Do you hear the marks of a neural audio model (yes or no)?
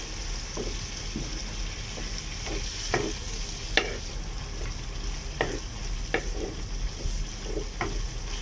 no